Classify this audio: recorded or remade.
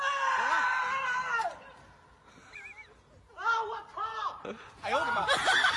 recorded